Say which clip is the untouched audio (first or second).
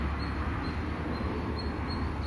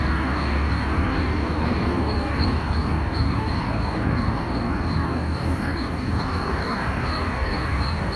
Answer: first